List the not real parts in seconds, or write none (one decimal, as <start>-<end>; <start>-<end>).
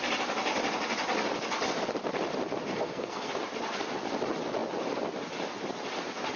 2.7-3.3